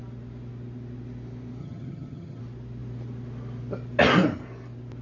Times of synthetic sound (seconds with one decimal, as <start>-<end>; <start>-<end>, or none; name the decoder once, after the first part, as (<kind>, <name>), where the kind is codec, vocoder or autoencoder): 1.6-2.4 (vocoder, HiFi-GAN)